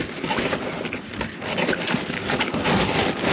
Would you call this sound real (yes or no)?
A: yes